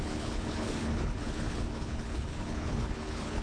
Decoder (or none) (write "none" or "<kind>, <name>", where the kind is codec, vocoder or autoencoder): codec, HILCodec